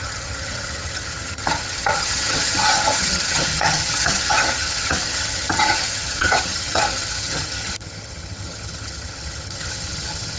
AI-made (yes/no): yes